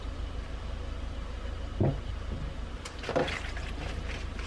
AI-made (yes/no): no